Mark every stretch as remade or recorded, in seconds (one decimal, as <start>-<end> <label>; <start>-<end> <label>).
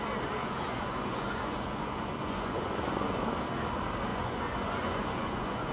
0.0-0.4 recorded; 0.4-3.2 remade; 3.2-4.1 recorded; 4.1-5.7 remade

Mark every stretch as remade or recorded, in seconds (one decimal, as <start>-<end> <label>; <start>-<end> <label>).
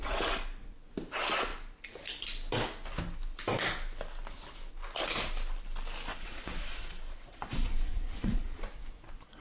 0.0-6.1 recorded; 6.1-8.6 remade; 8.6-9.4 recorded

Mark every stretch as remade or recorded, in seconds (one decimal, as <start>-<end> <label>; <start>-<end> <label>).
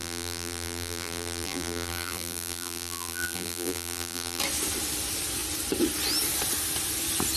0.0-4.4 remade; 4.4-7.4 recorded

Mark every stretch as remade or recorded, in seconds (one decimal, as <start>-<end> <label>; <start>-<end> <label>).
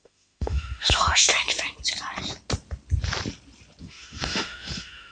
0.0-1.3 remade; 1.3-3.8 recorded; 3.8-5.1 remade